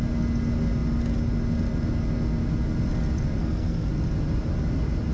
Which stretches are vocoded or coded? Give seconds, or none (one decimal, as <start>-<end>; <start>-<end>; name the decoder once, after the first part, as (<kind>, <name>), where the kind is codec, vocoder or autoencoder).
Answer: 3.4-3.9 (codec, SNAC)